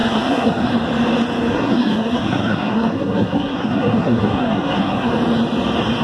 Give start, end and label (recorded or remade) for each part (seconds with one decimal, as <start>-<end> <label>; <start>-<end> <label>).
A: 0.0-0.7 remade; 0.7-1.5 recorded; 1.5-5.1 remade; 5.1-6.0 recorded